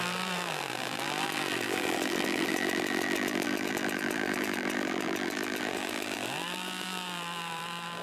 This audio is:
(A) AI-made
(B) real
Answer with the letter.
A